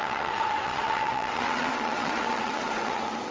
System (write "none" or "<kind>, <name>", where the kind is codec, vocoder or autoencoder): vocoder, WaveNeXt